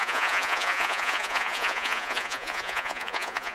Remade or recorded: remade